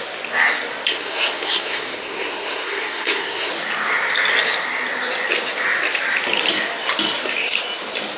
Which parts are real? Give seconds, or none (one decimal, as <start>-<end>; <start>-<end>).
0.0-0.9; 3.5-8.2

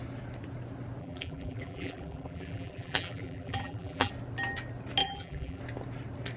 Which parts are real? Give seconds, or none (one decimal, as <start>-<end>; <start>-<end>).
0.0-1.0; 4.1-5.0; 5.6-6.4

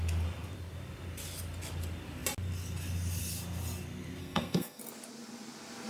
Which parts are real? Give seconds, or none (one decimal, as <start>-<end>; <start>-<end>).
0.0-4.2; 4.8-5.9

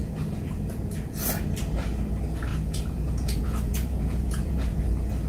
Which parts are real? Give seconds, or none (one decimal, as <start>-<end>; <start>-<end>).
1.2-2.5; 4.8-5.3

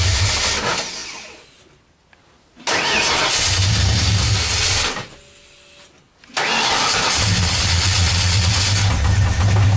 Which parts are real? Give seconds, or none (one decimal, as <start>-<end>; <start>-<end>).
0.0-7.4; 8.5-9.8

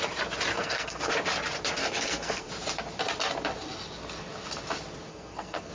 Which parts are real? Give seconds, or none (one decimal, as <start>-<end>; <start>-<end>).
0.0-0.5; 1.1-1.8; 2.5-5.1

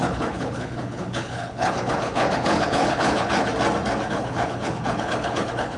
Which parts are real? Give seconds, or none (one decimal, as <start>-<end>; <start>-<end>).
3.5-4.1